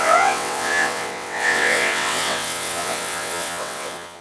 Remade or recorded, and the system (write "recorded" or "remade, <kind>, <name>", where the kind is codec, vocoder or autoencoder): remade, vocoder, WaveNeXt